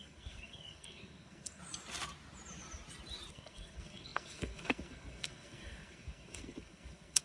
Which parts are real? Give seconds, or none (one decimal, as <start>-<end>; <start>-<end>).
1.6-3.3